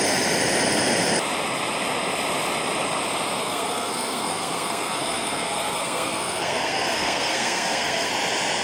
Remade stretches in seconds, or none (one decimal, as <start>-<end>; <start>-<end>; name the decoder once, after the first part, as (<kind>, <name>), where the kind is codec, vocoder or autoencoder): 3.4-8.1 (codec, SNAC)